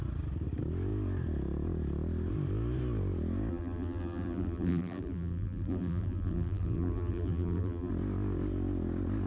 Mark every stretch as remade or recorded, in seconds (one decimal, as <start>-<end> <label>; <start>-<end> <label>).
0.0-3.5 recorded; 3.5-7.9 remade; 7.9-9.3 recorded

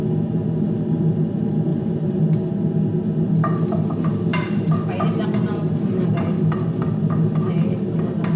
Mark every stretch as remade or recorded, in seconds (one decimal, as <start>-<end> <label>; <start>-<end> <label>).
0.0-1.7 recorded; 1.7-2.2 remade; 2.2-4.3 recorded; 4.3-6.2 remade; 6.2-8.4 recorded

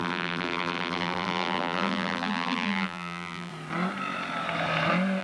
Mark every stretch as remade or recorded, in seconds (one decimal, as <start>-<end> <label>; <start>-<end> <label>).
0.0-3.5 remade; 3.5-5.2 recorded

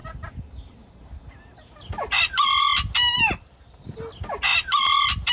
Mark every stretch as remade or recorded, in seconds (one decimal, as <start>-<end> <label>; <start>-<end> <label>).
0.0-3.2 remade; 3.2-4.5 recorded; 4.5-5.3 remade

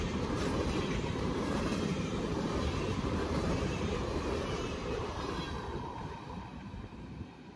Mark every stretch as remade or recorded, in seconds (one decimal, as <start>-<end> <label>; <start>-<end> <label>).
0.0-7.6 remade